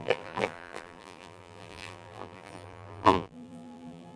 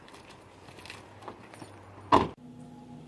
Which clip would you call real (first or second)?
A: second